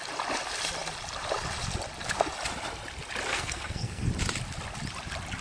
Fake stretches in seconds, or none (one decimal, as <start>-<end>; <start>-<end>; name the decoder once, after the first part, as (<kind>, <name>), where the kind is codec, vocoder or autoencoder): 3.3-4.1 (codec, SNAC)